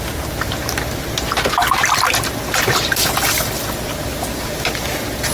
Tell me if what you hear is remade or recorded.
recorded